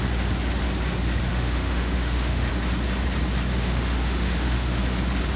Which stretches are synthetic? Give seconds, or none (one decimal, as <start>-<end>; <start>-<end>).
1.3-2.5; 3.5-4.8